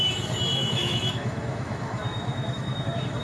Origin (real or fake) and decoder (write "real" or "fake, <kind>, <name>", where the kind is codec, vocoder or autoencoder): fake, autoencoder, DAC-VAE